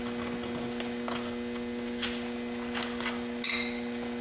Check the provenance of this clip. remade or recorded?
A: recorded